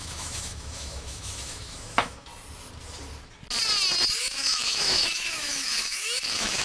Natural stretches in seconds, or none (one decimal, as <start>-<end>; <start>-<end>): 2.3-4.2